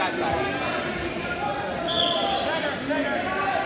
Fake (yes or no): no